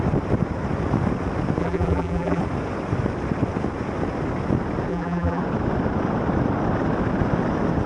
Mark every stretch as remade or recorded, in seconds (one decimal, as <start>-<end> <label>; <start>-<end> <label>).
0.0-1.6 recorded; 1.6-2.4 remade; 2.4-4.9 recorded; 4.9-5.4 remade; 5.4-7.9 recorded